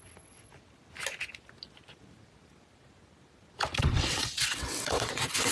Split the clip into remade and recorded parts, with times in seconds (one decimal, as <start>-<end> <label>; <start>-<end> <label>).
0.0-0.5 remade; 0.5-3.8 recorded; 3.8-5.5 remade